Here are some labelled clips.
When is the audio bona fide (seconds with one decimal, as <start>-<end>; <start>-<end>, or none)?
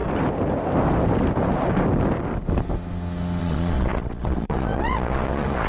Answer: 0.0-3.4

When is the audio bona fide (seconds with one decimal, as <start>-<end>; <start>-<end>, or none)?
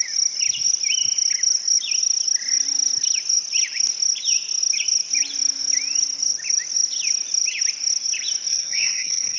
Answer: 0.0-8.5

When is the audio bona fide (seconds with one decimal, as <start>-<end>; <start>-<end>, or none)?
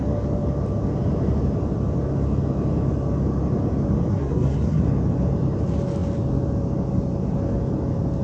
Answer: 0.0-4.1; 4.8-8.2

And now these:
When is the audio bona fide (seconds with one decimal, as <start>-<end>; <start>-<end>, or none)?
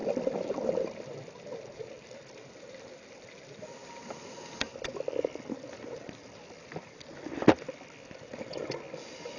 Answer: 0.0-9.4